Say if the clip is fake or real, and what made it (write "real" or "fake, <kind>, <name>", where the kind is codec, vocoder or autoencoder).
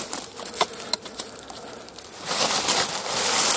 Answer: real